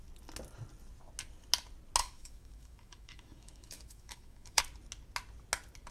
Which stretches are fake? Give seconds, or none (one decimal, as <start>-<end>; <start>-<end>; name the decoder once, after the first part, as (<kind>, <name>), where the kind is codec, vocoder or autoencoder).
2.0-4.6 (autoencoder, DAC-VAE)